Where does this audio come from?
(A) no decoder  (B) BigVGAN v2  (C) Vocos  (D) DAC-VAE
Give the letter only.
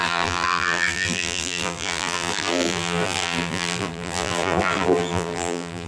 B